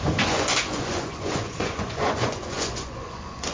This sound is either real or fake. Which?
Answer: fake